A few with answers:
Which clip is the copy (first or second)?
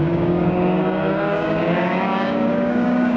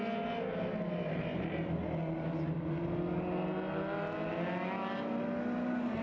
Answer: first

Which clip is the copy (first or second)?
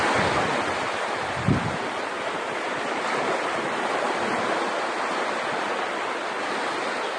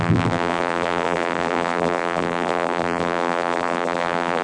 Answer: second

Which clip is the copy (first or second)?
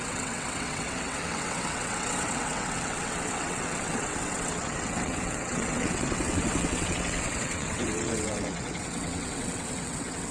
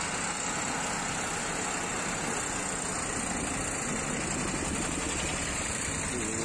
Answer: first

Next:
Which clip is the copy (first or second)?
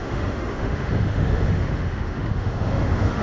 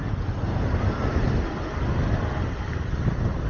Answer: first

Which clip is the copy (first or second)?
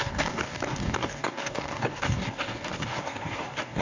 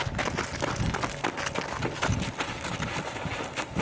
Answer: first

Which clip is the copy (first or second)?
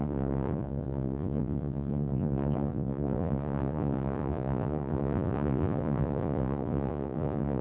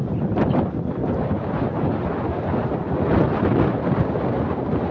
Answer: first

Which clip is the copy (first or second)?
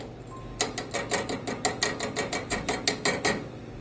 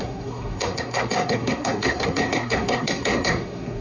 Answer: second